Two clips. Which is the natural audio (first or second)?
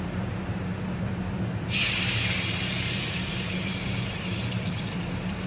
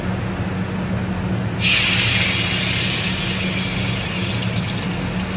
second